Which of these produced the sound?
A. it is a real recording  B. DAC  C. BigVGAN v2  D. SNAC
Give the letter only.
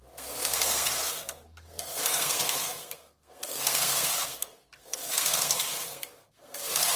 D